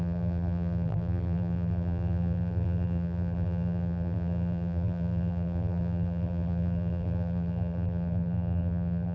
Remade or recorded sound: remade